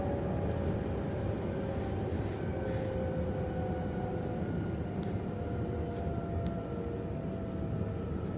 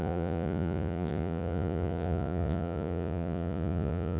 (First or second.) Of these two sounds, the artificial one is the second